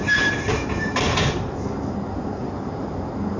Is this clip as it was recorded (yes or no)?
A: no